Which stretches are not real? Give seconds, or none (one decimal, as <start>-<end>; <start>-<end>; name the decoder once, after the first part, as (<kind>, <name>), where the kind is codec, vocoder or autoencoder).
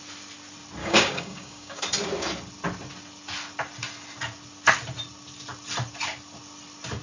0.8-1.8 (codec, DAC)